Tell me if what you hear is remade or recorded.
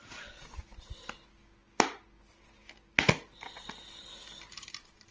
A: recorded